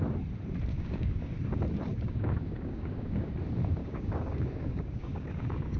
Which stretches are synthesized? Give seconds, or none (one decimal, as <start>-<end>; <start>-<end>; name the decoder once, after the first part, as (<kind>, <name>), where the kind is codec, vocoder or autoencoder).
0.7-1.3 (codec, DAC); 1.9-3.3; 3.8-5.8